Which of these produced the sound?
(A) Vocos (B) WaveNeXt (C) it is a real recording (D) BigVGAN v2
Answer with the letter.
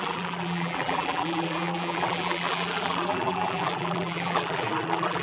D